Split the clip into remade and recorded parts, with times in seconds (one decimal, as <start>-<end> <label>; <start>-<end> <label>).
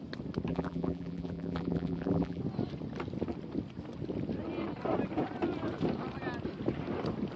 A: 0.0-0.5 recorded; 0.5-2.4 remade; 2.4-7.4 recorded